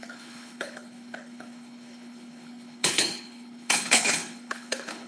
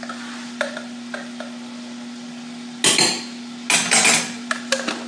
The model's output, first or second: first